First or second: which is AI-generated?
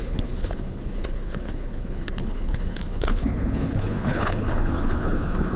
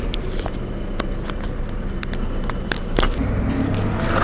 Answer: first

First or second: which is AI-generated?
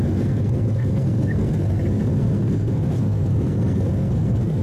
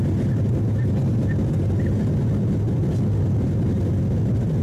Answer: first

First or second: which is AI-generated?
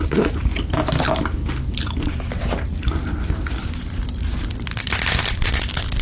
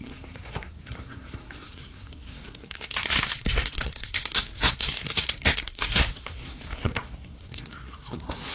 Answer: second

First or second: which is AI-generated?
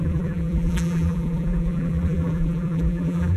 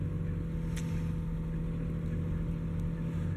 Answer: first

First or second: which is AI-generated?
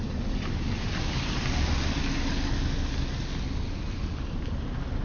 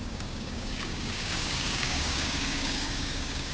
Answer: second